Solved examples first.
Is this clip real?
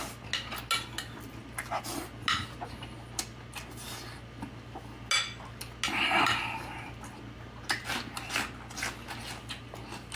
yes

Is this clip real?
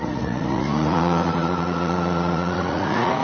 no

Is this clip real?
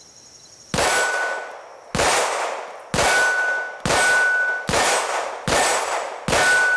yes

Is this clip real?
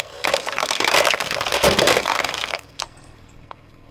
no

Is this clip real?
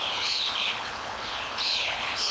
no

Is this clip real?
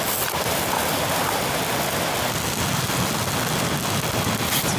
yes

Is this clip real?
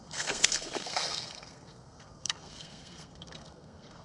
no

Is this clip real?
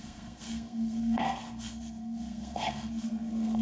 no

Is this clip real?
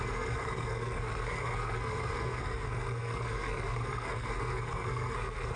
no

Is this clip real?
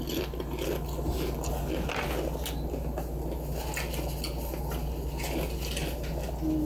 yes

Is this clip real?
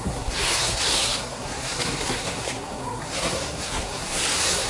no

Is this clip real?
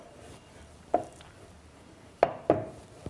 yes